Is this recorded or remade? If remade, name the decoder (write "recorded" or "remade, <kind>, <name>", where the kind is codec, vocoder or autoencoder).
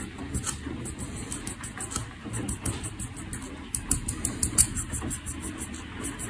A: recorded